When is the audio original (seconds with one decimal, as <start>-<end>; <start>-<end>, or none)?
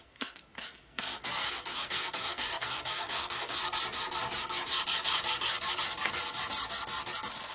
3.6-7.5